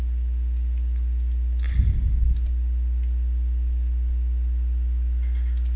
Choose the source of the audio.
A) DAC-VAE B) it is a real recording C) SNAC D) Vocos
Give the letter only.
B